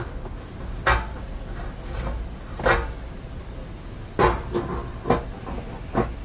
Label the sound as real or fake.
real